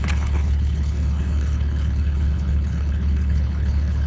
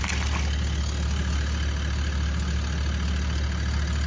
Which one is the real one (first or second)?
second